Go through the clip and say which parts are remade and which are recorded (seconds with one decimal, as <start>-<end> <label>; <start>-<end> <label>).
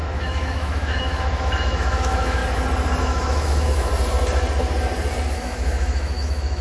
0.0-2.4 remade; 2.4-3.0 recorded; 3.0-3.9 remade; 3.9-5.3 recorded; 5.3-6.6 remade